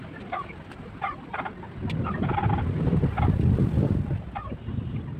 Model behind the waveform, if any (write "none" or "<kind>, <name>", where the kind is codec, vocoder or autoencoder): none